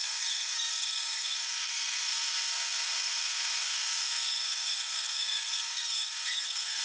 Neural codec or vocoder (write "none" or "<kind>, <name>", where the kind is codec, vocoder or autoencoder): codec, SNAC